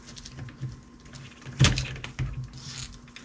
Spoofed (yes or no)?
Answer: no